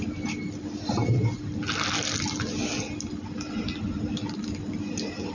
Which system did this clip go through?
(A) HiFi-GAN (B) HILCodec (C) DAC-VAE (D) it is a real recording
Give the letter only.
D